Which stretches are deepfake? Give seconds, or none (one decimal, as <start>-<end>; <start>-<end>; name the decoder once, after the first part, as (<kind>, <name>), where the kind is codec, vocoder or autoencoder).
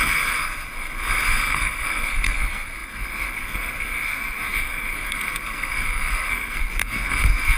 0.0-7.6 (codec, SNAC)